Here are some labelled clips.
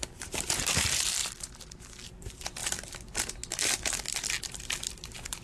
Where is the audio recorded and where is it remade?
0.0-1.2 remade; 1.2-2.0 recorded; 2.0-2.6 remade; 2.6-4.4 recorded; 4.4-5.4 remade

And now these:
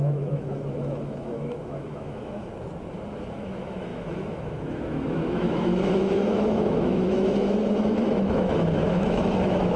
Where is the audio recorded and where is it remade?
0.0-2.5 remade; 2.5-3.3 recorded; 3.3-9.8 remade